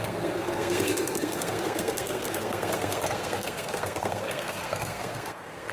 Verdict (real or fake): fake